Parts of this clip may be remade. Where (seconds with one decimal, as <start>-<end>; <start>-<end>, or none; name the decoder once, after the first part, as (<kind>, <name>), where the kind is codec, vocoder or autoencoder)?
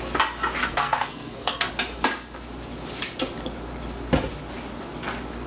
0.6-1.7 (codec, SNAC)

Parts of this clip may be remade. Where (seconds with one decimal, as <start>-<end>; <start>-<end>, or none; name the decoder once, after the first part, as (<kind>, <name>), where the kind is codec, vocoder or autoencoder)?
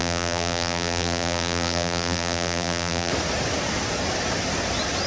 0.0-3.1 (vocoder, BigVGAN v2)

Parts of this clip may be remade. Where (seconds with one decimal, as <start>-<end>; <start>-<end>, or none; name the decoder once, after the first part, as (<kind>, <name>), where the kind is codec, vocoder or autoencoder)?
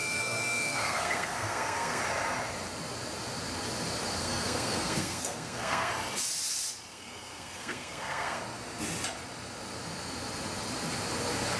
0.0-2.0 (codec, SNAC); 4.2-5.9; 6.9-8.4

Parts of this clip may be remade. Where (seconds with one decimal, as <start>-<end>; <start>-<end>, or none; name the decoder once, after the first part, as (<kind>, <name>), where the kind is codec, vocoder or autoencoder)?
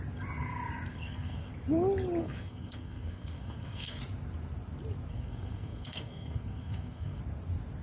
0.9-1.5 (codec, SNAC); 2.2-4.0; 5.1-7.2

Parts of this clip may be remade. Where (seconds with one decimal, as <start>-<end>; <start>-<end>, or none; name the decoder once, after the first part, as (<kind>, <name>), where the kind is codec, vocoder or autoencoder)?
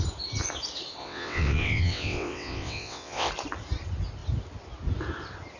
1.0-3.3 (vocoder, WaveNeXt)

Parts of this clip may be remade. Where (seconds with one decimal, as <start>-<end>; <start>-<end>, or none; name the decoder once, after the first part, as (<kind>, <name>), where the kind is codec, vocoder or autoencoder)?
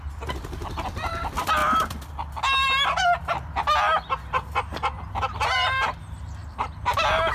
none